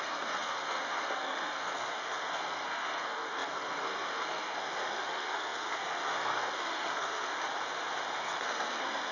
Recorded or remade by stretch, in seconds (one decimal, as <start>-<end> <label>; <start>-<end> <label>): 0.0-7.3 remade; 7.3-8.2 recorded; 8.2-9.1 remade